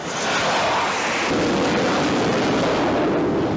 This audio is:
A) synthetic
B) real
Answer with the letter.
B